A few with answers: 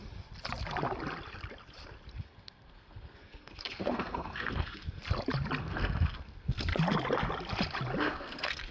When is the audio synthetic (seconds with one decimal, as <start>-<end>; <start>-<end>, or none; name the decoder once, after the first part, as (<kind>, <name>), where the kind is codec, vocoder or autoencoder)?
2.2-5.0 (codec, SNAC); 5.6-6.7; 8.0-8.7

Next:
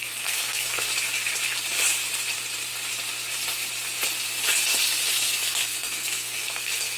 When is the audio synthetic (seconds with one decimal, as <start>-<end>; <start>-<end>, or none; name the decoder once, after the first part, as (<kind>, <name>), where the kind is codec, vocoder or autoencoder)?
0.0-0.9 (codec, SNAC); 5.1-7.0

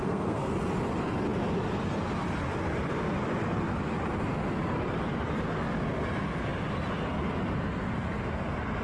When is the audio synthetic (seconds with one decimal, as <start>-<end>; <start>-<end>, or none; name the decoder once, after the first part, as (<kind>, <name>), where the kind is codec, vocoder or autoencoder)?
0.0-0.5 (codec, SNAC)